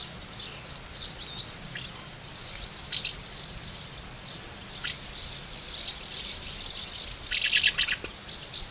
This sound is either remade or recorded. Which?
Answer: recorded